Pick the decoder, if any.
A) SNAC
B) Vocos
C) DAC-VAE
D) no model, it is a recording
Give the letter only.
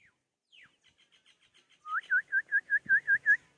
D